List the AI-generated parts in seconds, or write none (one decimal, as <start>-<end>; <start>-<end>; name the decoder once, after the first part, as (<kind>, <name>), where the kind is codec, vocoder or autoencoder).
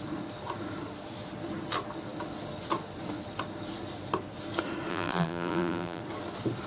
4.9-6.0 (vocoder, BigVGAN v2)